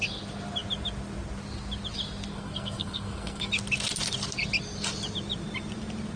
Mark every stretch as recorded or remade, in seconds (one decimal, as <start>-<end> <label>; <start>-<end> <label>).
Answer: 0.0-2.3 recorded; 2.3-3.5 remade; 3.5-6.2 recorded